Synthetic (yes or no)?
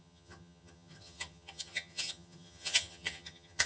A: yes